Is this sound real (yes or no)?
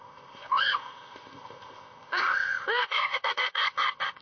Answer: no